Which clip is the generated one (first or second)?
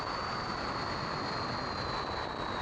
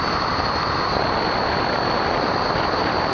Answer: second